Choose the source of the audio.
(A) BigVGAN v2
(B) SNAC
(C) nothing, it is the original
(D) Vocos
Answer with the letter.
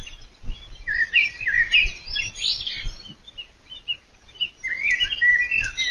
C